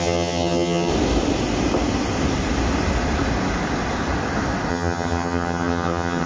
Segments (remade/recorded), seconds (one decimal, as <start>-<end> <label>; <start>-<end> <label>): 0.0-0.9 remade; 0.9-4.7 recorded; 4.7-6.3 remade